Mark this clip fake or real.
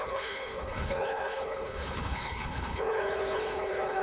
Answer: fake